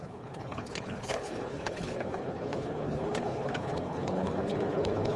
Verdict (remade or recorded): remade